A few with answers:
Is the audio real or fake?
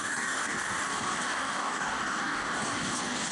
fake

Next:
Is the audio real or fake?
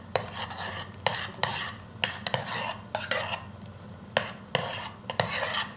real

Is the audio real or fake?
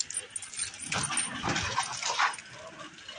real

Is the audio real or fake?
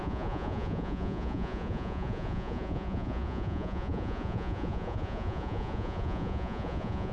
fake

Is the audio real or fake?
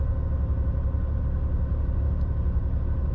real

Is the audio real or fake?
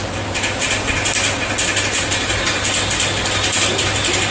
real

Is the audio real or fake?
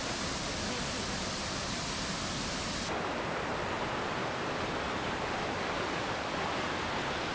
real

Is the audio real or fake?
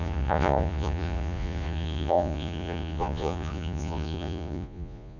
fake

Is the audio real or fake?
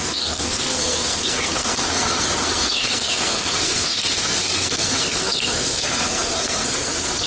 fake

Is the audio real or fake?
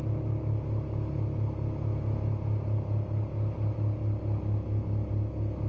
real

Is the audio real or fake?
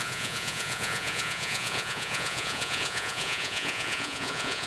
fake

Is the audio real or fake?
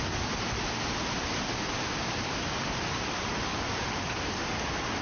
real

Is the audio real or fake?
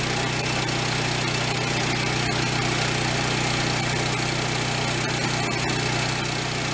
real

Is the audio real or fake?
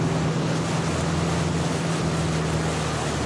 real